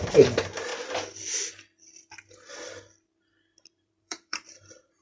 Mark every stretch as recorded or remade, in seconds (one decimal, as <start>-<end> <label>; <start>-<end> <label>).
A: 0.0-0.7 remade; 0.7-3.7 recorded; 3.7-5.0 remade